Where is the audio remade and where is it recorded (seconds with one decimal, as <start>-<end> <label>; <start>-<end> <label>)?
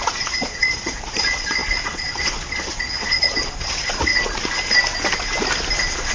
0.0-4.1 remade; 4.1-6.1 recorded